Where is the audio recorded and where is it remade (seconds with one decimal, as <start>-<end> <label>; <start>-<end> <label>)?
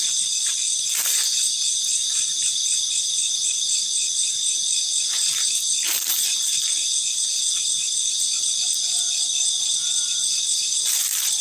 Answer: 0.0-11.4 recorded